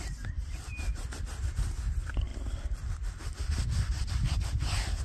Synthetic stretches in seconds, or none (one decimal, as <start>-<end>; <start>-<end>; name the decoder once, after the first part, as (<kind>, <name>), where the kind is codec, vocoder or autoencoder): 2.3-4.1 (vocoder, BigVGAN v2)